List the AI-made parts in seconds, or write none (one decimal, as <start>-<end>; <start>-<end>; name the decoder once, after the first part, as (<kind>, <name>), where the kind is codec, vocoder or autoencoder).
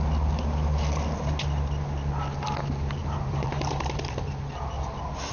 3.0-4.3 (vocoder, BigVGAN v2)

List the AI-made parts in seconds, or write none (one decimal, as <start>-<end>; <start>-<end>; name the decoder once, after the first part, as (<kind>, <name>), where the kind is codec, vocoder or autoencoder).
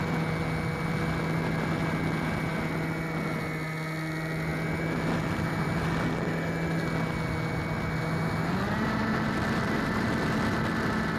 none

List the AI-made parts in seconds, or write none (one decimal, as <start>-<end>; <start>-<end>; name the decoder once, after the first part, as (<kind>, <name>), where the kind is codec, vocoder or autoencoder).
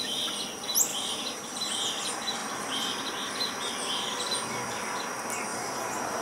0.9-1.5 (vocoder, BigVGAN v2); 5.5-6.2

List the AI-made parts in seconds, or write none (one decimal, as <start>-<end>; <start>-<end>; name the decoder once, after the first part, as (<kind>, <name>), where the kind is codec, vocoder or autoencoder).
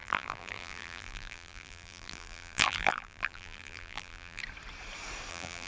0.0-4.4 (vocoder, BigVGAN v2); 5.3-5.7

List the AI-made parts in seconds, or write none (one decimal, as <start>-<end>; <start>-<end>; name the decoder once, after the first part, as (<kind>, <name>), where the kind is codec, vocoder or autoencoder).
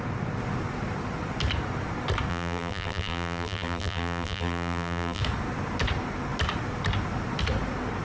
2.3-5.2 (vocoder, BigVGAN v2)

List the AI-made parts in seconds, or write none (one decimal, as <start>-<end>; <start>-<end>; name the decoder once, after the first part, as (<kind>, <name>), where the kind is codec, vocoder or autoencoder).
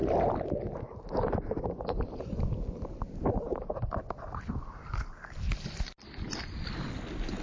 none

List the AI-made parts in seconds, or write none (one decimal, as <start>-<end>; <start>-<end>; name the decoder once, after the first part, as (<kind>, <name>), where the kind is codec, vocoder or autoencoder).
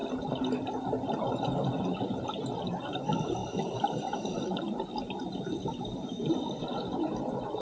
3.4-6.3 (vocoder, BigVGAN v2)